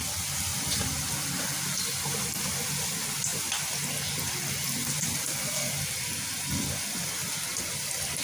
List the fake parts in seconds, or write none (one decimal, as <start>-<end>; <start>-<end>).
0.5-2.9; 3.3-6.0